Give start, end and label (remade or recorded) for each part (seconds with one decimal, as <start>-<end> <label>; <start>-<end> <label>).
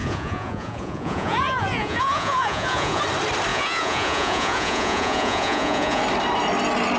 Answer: 0.0-3.0 remade; 3.0-3.5 recorded; 3.5-6.0 remade; 6.0-7.0 recorded